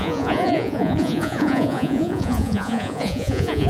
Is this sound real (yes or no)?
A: no